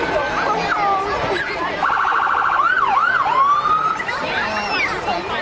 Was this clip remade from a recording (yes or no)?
no